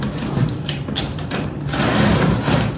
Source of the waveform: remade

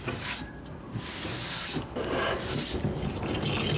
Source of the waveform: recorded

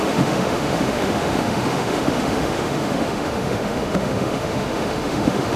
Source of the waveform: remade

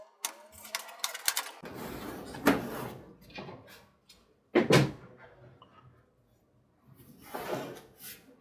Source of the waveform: recorded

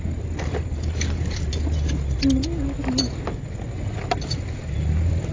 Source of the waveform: recorded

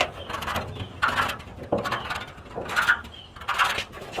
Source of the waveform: recorded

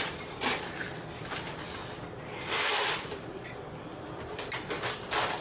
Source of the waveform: recorded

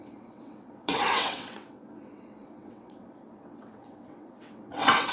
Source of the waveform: remade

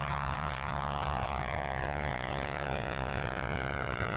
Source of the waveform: remade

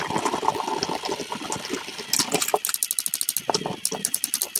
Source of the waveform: recorded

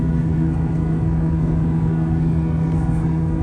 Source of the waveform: remade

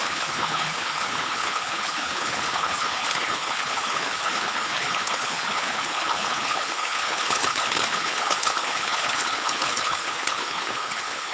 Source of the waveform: remade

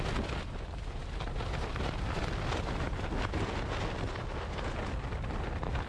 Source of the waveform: recorded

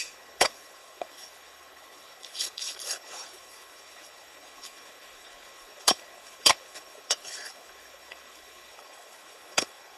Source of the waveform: remade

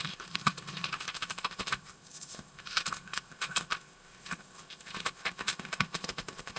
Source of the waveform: remade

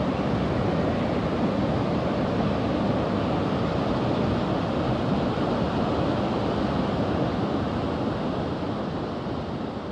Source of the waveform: recorded